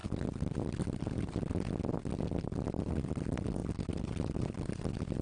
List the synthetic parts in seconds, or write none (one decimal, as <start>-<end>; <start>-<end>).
none